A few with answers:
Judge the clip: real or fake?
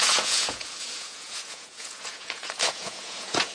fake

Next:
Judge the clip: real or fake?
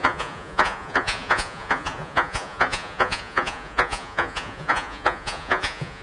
fake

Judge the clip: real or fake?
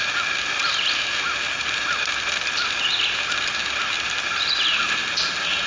real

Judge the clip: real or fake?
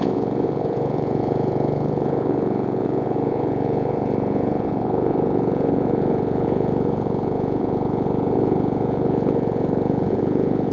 fake